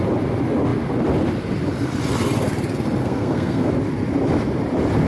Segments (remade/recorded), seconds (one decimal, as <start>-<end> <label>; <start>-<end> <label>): 0.0-3.0 recorded; 3.0-3.7 remade; 3.7-5.1 recorded